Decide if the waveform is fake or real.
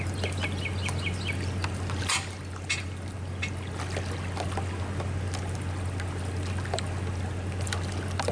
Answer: real